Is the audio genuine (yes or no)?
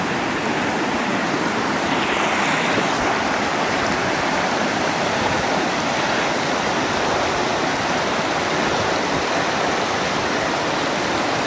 yes